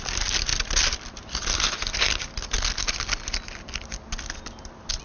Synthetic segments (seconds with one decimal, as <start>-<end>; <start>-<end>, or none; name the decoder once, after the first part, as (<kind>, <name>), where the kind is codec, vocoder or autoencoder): none